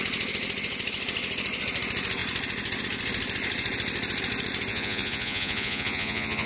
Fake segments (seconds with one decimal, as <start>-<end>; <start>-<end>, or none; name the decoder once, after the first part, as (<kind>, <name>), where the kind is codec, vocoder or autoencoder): 4.7-6.5 (vocoder, Vocos)